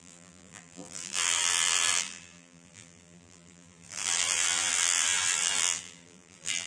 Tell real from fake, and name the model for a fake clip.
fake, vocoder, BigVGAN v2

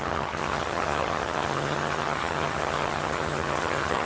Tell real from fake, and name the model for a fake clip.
fake, vocoder, HiFi-GAN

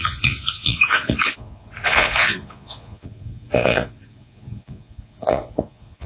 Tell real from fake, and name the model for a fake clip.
fake, vocoder, Vocos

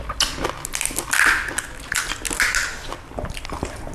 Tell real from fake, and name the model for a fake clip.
real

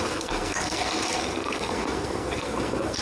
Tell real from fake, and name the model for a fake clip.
fake, codec, SNAC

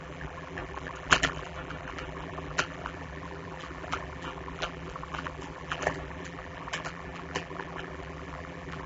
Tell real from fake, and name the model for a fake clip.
fake, vocoder, BigVGAN v2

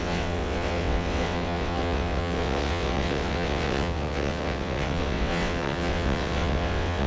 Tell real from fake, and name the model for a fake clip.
fake, vocoder, WaveNeXt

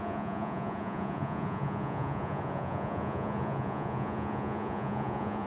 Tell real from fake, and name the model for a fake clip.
fake, vocoder, Vocos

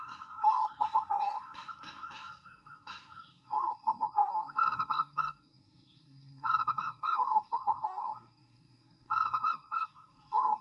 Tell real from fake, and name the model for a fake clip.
fake, codec, SNAC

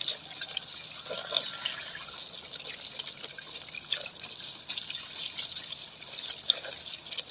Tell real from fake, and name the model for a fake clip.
real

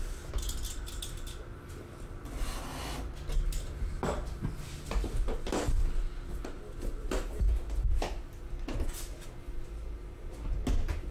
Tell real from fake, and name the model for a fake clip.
real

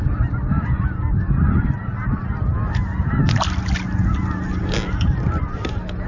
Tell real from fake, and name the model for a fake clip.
real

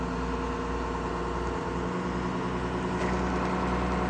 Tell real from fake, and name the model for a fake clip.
real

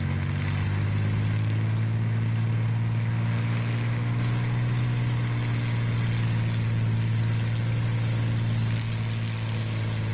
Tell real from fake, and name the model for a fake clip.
real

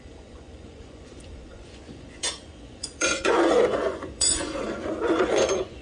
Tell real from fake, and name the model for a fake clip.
fake, vocoder, Vocos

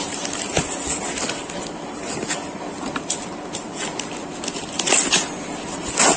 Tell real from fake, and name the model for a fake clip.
real